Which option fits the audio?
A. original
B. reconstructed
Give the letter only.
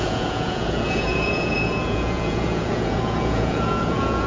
B